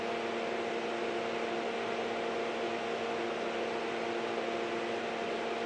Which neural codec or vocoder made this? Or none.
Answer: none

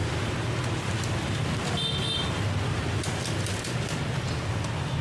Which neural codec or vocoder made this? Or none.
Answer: none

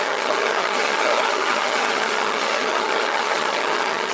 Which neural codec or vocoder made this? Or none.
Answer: vocoder, HiFi-GAN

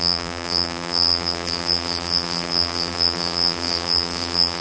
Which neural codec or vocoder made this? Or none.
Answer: vocoder, BigVGAN v2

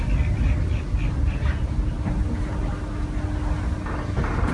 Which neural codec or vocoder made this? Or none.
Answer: none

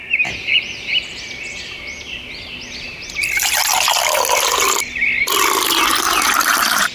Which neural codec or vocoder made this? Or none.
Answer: none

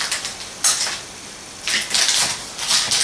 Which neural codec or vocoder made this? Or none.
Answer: none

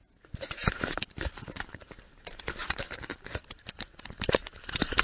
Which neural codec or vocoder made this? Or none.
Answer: vocoder, BigVGAN v2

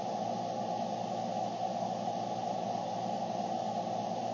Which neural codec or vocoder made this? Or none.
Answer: none